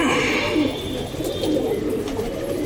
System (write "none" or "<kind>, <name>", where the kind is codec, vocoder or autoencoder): none